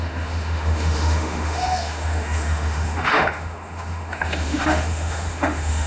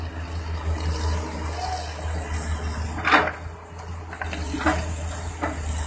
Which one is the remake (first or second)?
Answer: first